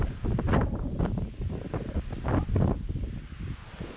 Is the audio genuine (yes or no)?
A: yes